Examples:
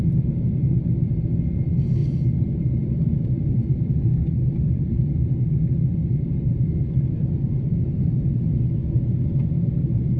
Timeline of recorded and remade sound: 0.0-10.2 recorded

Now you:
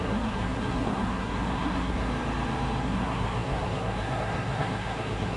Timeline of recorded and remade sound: 0.0-2.1 remade; 2.1-2.8 recorded; 2.8-5.4 remade